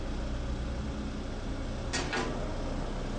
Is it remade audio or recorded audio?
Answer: recorded